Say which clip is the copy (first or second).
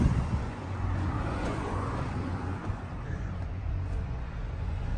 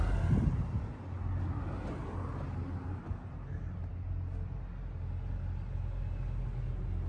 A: first